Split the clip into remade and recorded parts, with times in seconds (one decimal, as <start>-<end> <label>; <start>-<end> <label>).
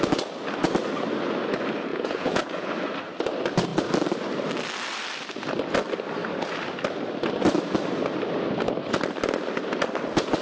0.0-1.9 recorded; 1.9-2.7 remade; 2.7-10.4 recorded